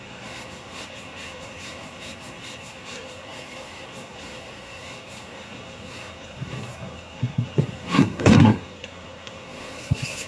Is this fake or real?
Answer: fake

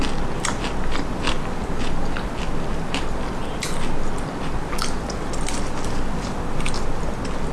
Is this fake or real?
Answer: real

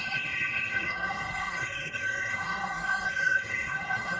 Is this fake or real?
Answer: fake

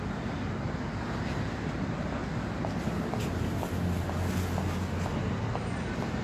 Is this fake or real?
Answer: real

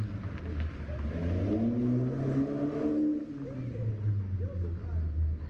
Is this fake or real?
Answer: real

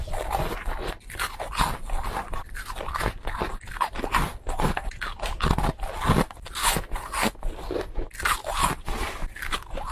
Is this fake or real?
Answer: real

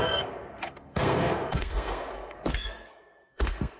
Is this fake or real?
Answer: fake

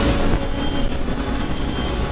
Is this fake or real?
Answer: real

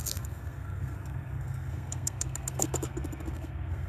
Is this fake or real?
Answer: fake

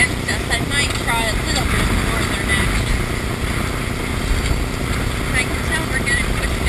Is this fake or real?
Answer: real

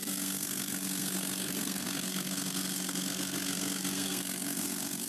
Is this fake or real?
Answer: fake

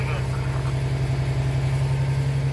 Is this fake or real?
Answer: real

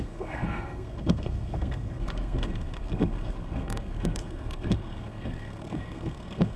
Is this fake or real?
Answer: fake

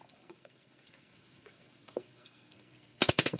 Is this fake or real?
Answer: fake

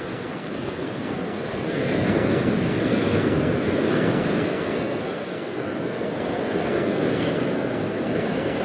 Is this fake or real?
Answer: fake